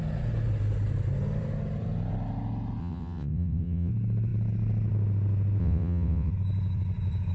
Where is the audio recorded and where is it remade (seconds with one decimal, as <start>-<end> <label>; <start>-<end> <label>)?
0.0-2.8 recorded; 2.8-3.9 remade; 3.9-5.6 recorded; 5.6-6.3 remade; 6.3-7.3 recorded